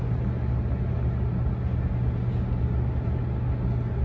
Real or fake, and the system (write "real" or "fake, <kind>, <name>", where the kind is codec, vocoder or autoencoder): real